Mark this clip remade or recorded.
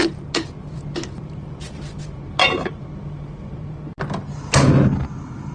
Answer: recorded